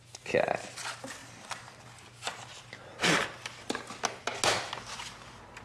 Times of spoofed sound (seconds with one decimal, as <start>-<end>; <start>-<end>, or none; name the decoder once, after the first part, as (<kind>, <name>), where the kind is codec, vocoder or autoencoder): none